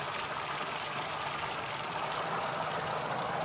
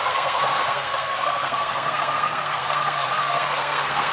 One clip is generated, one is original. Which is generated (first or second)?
second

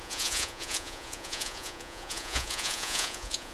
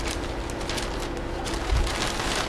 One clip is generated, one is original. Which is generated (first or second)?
first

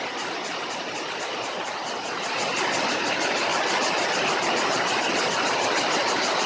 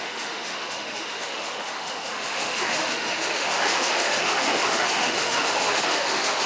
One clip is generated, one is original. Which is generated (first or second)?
second